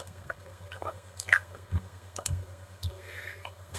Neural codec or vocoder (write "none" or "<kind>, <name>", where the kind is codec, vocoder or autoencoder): codec, SNAC